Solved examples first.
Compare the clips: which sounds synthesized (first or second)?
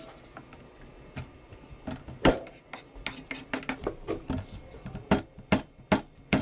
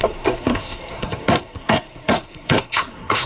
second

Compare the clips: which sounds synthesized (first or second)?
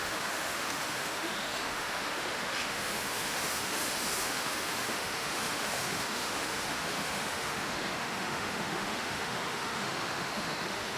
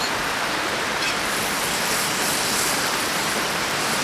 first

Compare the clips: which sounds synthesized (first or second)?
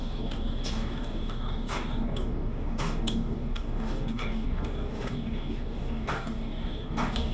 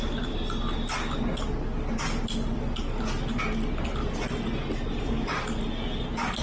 first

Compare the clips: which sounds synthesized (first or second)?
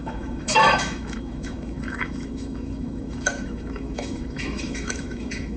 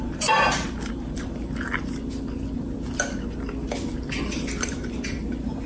first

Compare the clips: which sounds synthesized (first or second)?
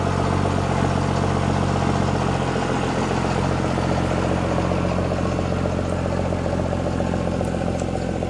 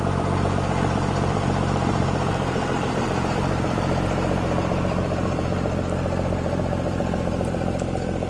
second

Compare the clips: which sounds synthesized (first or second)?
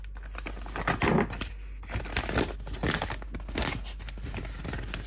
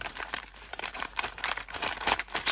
second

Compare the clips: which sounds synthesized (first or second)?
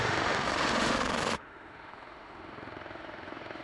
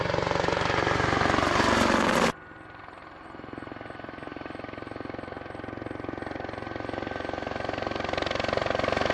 first